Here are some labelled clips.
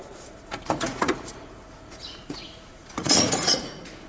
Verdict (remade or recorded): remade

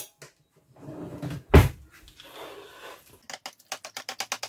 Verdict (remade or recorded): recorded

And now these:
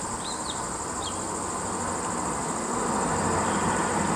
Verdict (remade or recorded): recorded